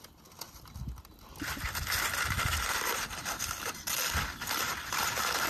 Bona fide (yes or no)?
yes